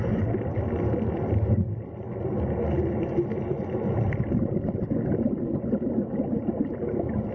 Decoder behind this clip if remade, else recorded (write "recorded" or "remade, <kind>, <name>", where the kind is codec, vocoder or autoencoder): recorded